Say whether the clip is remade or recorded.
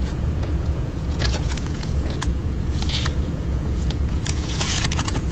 remade